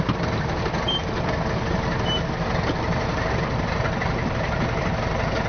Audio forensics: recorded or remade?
recorded